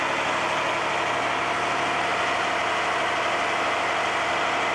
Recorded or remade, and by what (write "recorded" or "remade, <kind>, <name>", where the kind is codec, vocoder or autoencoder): recorded